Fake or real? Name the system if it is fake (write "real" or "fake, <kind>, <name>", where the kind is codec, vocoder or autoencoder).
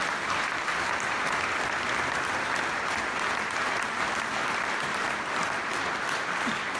real